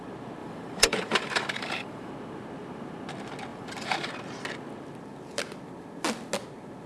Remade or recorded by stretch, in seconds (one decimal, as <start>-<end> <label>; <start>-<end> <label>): 0.0-0.4 recorded; 0.4-2.1 remade; 2.1-3.5 recorded; 3.5-4.1 remade; 4.1-6.9 recorded